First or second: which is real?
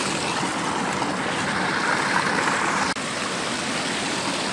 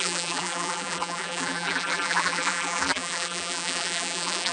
first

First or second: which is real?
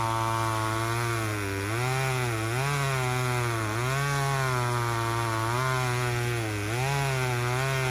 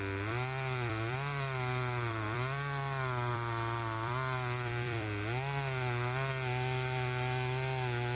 first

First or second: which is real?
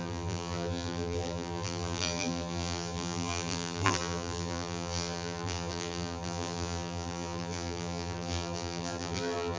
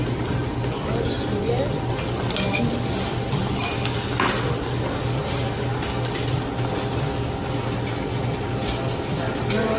second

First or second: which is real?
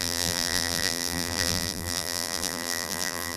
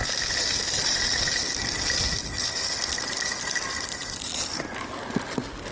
second